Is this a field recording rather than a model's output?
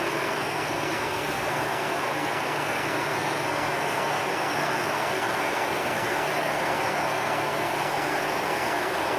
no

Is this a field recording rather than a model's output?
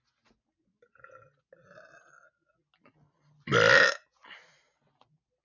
yes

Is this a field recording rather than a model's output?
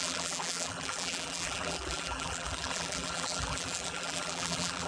no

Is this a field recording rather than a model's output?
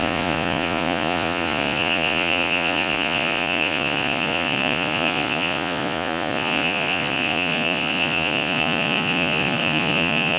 no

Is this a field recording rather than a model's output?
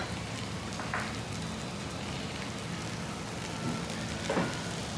yes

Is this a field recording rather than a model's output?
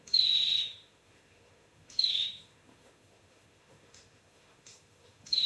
no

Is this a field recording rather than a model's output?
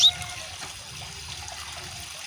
yes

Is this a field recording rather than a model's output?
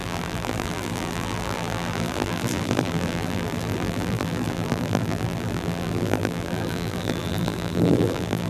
no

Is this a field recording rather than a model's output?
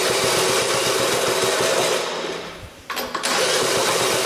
yes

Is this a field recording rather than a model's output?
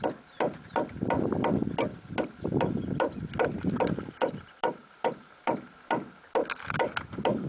yes